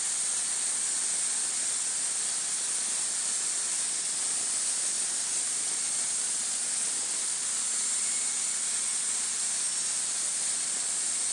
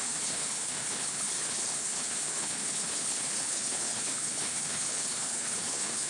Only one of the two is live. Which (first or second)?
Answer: first